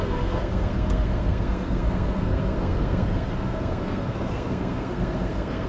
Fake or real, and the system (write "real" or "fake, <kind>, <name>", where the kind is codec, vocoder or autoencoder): fake, codec, SNAC